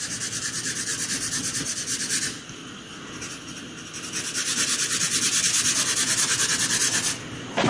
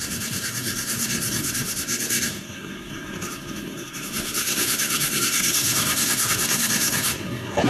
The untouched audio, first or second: first